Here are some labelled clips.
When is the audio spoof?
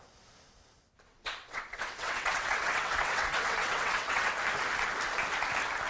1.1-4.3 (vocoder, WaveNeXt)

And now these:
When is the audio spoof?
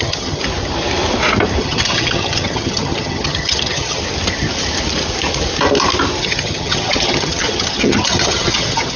0.0-0.4 (vocoder, HiFi-GAN); 1.6-4.0; 6.2-9.0